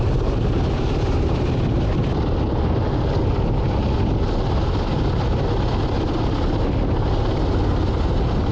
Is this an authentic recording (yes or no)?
yes